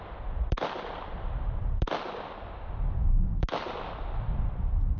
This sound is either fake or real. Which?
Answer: real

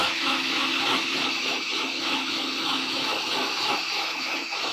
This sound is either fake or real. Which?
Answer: fake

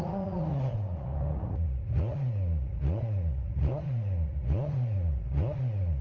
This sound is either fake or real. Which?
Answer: fake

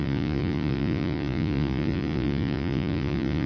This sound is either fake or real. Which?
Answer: fake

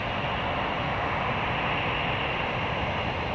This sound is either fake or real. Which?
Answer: real